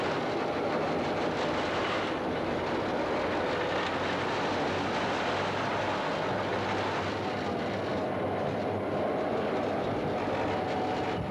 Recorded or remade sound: recorded